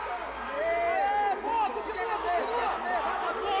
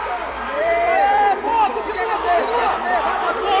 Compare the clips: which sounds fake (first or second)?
second